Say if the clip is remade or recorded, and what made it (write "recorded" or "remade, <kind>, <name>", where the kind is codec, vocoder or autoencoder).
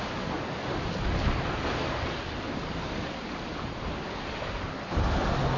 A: recorded